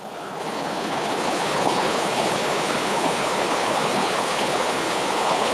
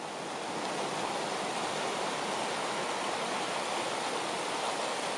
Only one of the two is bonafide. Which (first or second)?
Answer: second